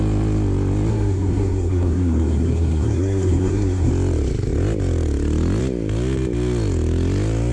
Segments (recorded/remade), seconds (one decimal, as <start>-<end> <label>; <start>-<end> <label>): 0.0-0.9 recorded; 0.9-3.9 remade; 3.9-7.5 recorded